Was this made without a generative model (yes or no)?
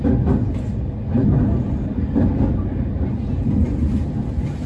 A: yes